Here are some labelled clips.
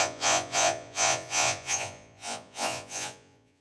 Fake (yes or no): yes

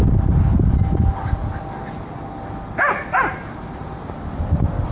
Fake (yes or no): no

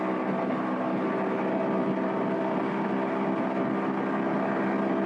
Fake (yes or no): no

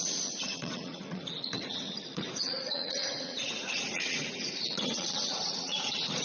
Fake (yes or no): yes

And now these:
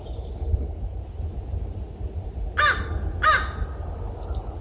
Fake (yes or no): no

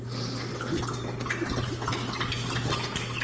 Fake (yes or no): no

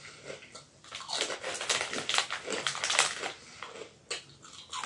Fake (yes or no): no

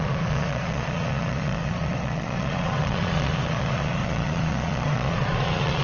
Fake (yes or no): yes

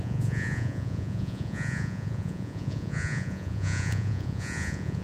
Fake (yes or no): yes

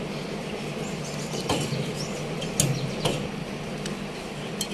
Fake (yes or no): no